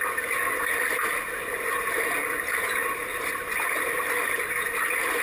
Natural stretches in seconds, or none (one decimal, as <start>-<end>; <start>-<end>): 0.0-2.8; 4.3-5.2